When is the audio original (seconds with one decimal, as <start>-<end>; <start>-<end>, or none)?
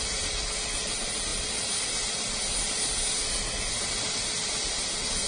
0.0-5.3